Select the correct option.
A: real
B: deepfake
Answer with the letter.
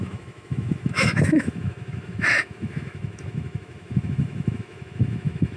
B